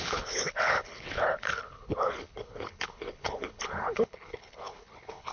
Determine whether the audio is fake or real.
fake